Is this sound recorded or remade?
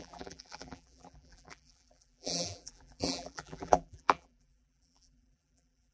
remade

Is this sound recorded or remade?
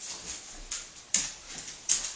recorded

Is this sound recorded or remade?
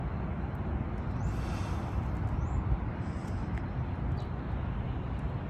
recorded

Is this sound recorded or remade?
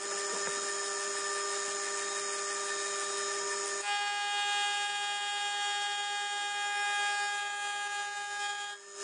recorded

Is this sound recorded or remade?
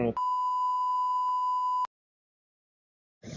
recorded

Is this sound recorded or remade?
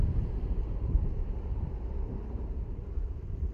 remade